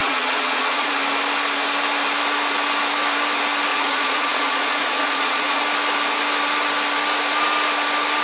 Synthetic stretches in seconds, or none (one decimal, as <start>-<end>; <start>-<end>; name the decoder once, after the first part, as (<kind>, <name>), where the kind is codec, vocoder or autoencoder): 0.0-0.9 (vocoder, Vocos); 3.7-5.6